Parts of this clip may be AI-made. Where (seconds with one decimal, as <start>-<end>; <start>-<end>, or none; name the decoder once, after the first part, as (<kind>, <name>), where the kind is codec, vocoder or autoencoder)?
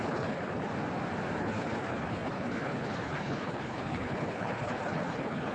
0.0-0.7 (codec, HILCodec); 1.4-5.5